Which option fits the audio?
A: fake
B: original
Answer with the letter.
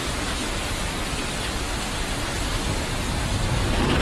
B